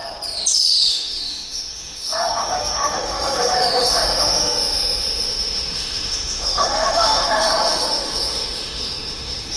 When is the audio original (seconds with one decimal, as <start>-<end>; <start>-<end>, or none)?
0.0-0.9